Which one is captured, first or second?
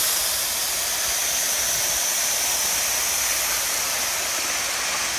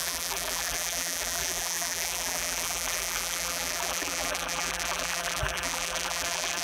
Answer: first